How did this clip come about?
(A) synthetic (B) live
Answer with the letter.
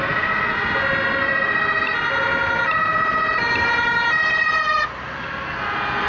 B